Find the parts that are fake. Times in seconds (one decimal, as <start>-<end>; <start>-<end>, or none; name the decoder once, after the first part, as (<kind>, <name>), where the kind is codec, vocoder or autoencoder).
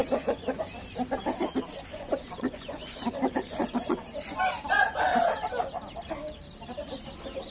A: 0.0-0.6 (vocoder, Vocos); 1.9-4.4